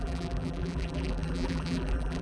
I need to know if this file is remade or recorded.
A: remade